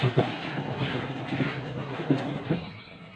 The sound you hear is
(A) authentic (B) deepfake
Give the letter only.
B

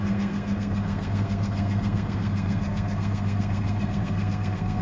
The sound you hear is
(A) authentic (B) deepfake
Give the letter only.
B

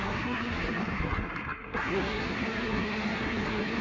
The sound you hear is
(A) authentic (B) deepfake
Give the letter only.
B